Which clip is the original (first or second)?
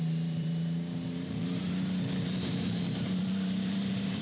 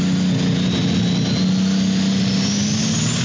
second